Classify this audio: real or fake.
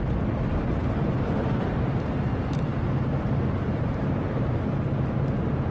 fake